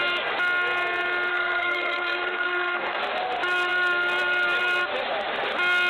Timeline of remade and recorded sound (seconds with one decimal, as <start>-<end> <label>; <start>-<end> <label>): 0.0-1.3 recorded; 1.3-3.0 remade; 3.0-5.9 recorded